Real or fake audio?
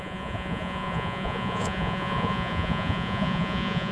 fake